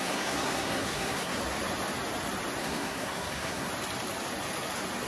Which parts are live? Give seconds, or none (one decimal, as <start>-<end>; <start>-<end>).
1.4-2.6; 3.7-5.1